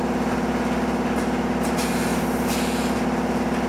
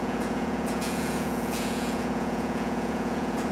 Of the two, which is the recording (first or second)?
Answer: first